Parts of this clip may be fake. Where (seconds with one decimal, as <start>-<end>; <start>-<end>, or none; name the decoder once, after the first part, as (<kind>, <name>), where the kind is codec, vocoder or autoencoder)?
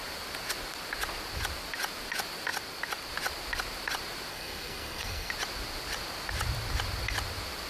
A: 4.3-5.3 (codec, SNAC)